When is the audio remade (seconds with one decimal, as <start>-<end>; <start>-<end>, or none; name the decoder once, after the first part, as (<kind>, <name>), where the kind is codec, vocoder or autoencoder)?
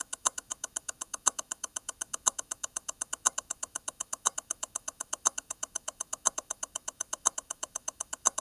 0.0-8.4 (autoencoder, DAC-VAE)